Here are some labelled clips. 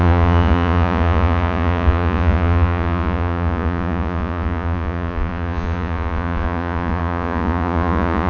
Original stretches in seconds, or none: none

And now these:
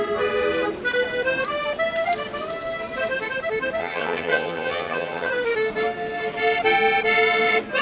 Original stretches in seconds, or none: 0.0-3.8; 5.3-7.8

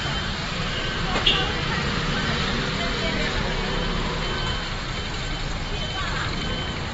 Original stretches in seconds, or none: 0.0-6.9

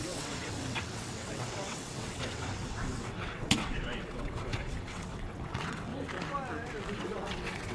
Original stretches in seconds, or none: 5.9-6.9

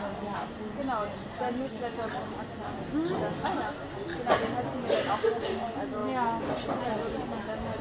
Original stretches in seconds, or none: 0.0-7.8